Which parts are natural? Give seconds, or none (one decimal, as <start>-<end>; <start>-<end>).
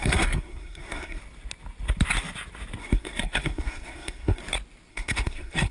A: 1.2-2.8; 4.4-4.9